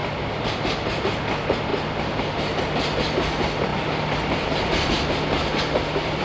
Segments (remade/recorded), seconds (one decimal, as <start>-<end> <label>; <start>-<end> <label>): 0.0-6.2 recorded

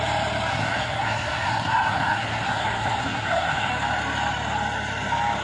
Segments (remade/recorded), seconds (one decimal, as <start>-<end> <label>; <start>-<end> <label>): 0.0-0.5 recorded; 0.5-3.7 remade; 3.7-5.4 recorded

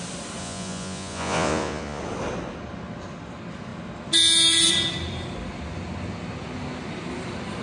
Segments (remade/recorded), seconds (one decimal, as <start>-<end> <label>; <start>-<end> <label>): 0.0-0.4 recorded; 0.4-2.0 remade; 2.0-7.6 recorded

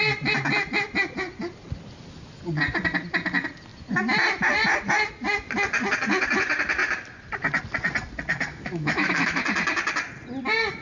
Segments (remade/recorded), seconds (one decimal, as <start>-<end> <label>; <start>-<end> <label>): 0.0-8.5 recorded; 8.5-9.4 remade; 9.4-10.8 recorded

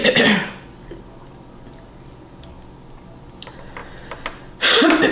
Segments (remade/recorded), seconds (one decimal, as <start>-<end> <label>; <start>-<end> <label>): 0.0-5.1 recorded

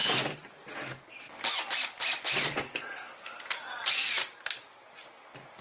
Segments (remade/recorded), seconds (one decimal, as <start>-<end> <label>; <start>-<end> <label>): 0.0-5.6 recorded

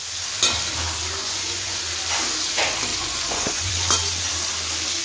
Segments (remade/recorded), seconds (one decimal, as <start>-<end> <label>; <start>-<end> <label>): 0.0-1.2 recorded; 1.2-1.8 remade; 1.8-2.9 recorded; 2.9-3.7 remade; 3.7-5.0 recorded

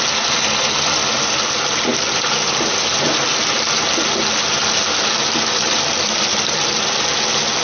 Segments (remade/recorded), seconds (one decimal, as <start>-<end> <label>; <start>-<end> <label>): 0.0-7.6 recorded